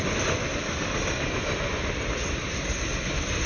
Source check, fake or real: real